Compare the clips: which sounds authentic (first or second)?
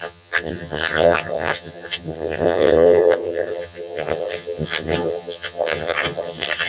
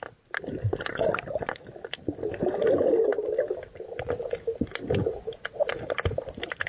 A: second